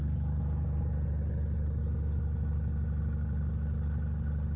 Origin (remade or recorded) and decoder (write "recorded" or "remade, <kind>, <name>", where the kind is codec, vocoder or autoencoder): recorded